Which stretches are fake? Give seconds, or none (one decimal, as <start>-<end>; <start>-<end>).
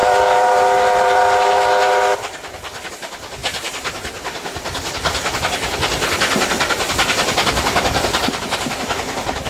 none